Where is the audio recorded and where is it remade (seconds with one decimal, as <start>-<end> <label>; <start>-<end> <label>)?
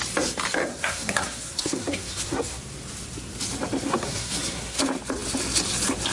0.0-0.7 recorded; 0.7-2.6 remade; 2.6-3.9 recorded; 3.9-4.8 remade; 4.8-6.1 recorded